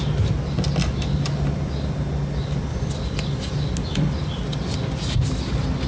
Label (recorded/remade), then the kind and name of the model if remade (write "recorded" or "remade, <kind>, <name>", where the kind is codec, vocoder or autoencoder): recorded